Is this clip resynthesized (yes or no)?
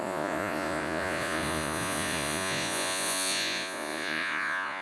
yes